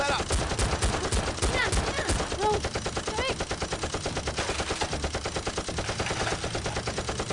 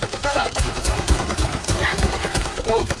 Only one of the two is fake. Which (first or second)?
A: second